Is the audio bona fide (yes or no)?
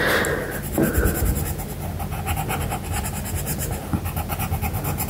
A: yes